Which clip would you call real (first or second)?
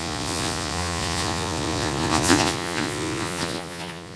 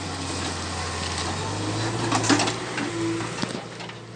second